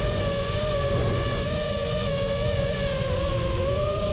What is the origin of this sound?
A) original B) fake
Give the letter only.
B